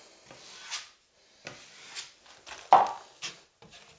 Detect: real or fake real